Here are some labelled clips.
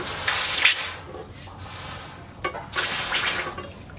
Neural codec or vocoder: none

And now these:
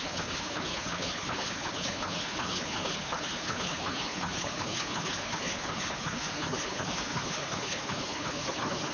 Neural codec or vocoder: codec, HILCodec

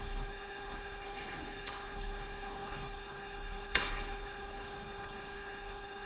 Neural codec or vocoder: codec, HILCodec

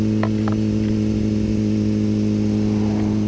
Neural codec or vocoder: none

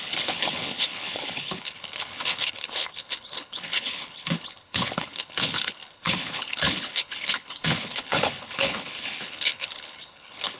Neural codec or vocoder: codec, HILCodec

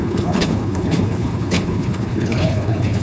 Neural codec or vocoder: codec, HILCodec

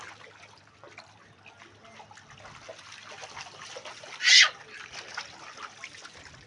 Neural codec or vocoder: none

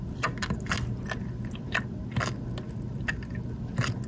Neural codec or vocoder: none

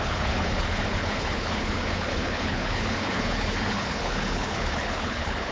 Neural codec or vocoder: codec, HILCodec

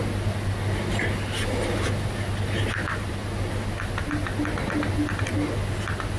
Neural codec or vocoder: none